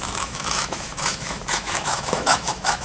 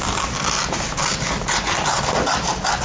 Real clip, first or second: second